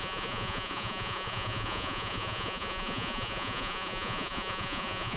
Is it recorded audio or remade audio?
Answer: remade